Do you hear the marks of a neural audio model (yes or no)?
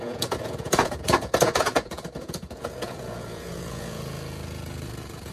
yes